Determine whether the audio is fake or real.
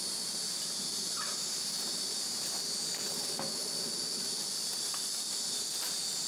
real